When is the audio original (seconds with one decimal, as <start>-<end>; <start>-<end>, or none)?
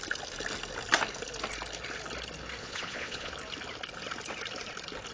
0.0-2.6; 3.3-5.1